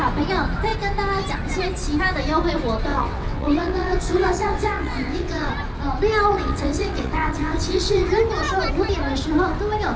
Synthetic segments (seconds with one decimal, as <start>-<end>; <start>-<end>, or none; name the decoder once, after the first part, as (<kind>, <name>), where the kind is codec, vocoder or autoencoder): 2.9-5.5 (vocoder, WaveNeXt); 6.3-8.1